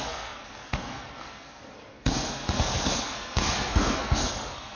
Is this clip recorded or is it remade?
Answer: remade